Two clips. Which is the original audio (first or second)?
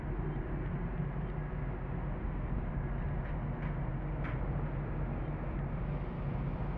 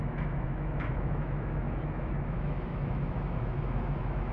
first